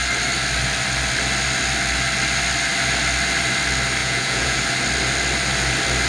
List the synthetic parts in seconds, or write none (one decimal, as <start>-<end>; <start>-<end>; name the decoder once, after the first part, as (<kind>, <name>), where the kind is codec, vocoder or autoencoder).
4.0-4.6 (vocoder, Vocos)